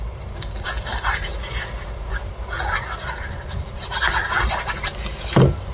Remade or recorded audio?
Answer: recorded